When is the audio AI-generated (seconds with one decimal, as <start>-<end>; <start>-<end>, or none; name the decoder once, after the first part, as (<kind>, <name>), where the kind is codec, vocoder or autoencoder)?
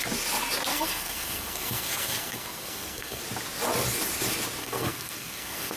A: 0.7-3.2 (codec, SNAC); 4.6-5.8